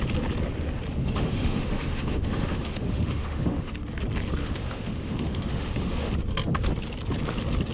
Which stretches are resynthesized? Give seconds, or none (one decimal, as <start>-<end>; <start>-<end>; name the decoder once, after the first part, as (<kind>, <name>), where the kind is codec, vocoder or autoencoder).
1.0-3.7 (autoencoder, DAC-VAE); 4.4-6.1